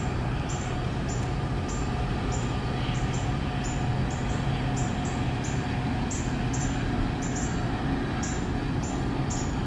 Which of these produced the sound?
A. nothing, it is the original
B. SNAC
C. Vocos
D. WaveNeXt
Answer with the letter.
A